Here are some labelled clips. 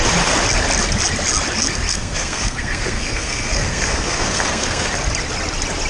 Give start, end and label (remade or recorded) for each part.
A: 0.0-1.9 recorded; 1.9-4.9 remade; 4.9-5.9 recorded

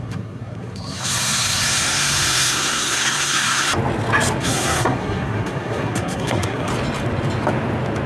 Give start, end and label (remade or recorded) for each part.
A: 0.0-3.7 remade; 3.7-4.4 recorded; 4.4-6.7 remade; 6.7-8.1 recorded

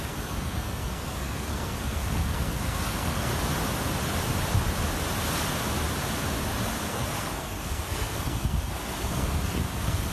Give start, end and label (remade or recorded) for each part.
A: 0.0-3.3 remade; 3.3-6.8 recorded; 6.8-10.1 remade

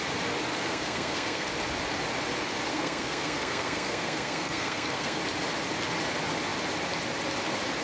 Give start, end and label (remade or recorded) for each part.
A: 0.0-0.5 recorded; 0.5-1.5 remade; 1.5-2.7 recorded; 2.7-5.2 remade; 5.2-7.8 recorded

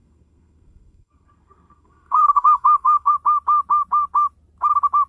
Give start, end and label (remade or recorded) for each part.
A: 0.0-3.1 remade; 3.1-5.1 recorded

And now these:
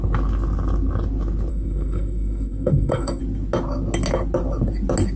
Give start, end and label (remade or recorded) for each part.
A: 0.0-1.5 recorded; 1.5-3.2 remade; 3.2-5.2 recorded

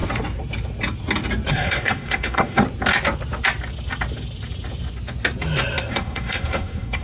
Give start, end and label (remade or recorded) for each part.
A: 0.0-1.5 recorded; 1.5-2.6 remade; 2.6-5.9 recorded; 5.9-7.0 remade

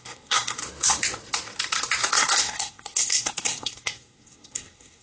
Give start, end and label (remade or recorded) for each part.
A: 0.0-0.6 remade; 0.6-2.1 recorded; 2.1-5.0 remade